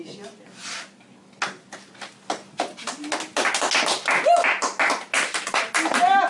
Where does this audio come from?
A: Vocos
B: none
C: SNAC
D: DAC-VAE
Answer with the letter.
B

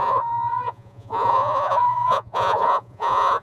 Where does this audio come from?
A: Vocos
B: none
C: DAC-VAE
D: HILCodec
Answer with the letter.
A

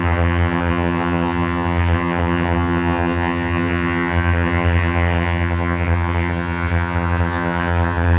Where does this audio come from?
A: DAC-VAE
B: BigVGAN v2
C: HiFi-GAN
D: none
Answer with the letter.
C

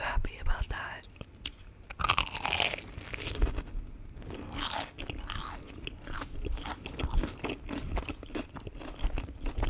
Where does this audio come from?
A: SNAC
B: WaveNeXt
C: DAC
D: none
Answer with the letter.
D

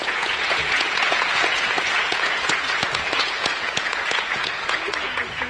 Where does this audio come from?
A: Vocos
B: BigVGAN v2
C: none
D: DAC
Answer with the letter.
A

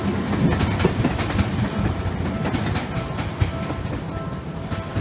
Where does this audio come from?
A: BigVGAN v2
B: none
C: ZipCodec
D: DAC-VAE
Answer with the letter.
B